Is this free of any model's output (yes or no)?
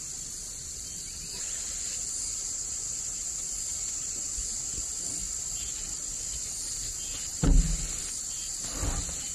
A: yes